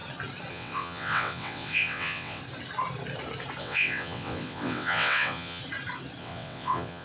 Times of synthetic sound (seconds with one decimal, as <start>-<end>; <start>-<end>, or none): 0.5-2.4; 3.6-5.6; 6.2-7.0